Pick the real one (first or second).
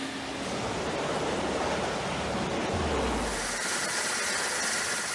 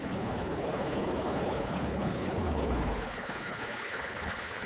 first